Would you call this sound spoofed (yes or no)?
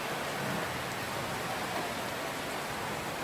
no